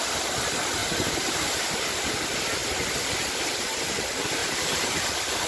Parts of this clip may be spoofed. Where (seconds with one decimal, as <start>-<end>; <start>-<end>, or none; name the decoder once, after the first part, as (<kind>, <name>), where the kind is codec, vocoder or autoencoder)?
0.8-1.7 (vocoder, BigVGAN v2); 4.4-5.5

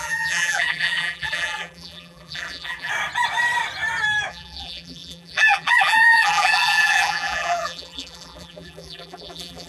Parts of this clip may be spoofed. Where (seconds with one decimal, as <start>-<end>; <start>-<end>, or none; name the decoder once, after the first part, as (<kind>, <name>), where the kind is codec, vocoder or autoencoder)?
0.0-2.9 (vocoder, BigVGAN v2); 4.3-9.7

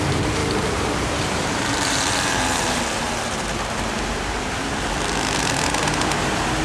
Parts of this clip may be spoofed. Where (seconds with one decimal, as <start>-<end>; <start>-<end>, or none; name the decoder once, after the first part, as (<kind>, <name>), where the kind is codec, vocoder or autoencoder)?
0.4-4.4 (vocoder, BigVGAN v2)

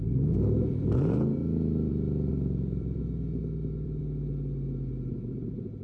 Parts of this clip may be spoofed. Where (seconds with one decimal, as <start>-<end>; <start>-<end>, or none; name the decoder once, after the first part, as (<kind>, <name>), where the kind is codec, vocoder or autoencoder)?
2.3-3.0 (vocoder, BigVGAN v2); 3.4-4.0; 4.9-5.8